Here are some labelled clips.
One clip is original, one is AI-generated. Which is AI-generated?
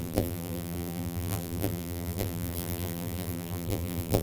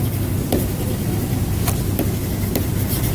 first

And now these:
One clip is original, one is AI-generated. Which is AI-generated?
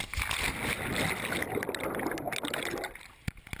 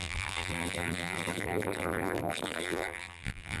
second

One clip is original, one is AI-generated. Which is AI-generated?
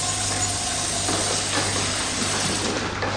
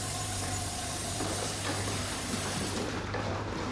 second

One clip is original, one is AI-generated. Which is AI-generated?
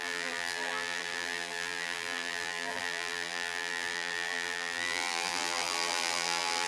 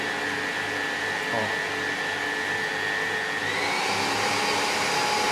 first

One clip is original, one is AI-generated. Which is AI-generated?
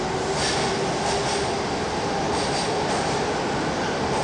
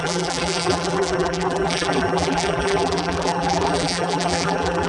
second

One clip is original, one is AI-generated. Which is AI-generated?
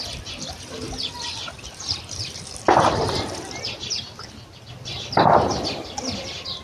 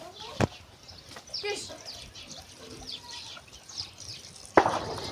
first